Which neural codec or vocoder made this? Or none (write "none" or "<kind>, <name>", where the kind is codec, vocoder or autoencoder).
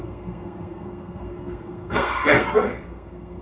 codec, SNAC